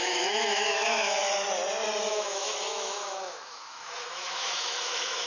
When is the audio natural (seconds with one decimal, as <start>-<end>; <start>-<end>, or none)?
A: 1.2-2.1